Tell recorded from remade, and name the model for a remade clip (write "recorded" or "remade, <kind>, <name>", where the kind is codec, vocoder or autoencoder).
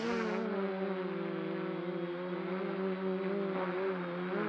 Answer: recorded